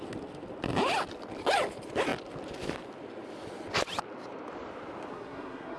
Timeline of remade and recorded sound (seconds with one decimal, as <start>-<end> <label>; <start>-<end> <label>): 0.0-5.1 recorded; 5.1-5.8 remade

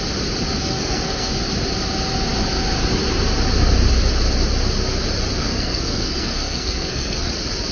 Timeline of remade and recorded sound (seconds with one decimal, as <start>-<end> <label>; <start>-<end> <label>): 0.0-0.6 recorded; 0.6-1.3 remade; 1.3-5.4 recorded; 5.4-7.3 remade; 7.3-7.7 recorded

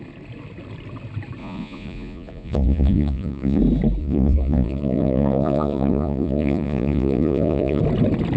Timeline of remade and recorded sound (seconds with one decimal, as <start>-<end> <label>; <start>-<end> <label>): 0.0-1.4 recorded; 1.4-3.6 remade; 3.6-4.0 recorded; 4.0-7.8 remade; 7.8-8.4 recorded

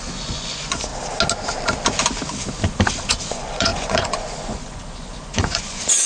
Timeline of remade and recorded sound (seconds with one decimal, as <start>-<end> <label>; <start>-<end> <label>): 0.0-0.9 remade; 0.9-3.1 recorded; 3.1-6.1 remade

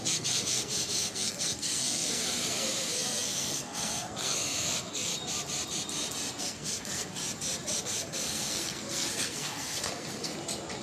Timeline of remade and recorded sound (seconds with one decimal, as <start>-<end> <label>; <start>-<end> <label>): 0.0-5.1 remade; 5.1-6.4 recorded; 6.4-7.2 remade; 7.2-7.8 recorded; 7.8-10.3 remade; 10.3-10.8 recorded

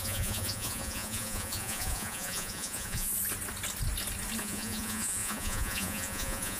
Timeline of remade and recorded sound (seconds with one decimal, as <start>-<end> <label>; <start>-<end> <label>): 0.0-3.1 remade; 3.1-4.4 recorded; 4.4-6.6 remade

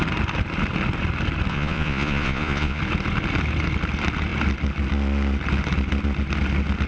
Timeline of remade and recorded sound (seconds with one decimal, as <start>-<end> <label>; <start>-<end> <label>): 0.0-1.5 recorded; 1.5-2.8 remade; 2.8-6.9 recorded

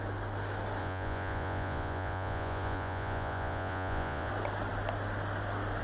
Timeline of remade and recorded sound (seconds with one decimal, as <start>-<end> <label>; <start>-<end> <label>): 0.0-0.8 recorded; 0.8-4.3 remade; 4.3-5.8 recorded